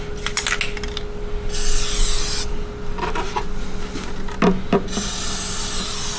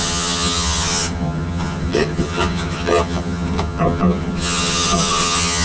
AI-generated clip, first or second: second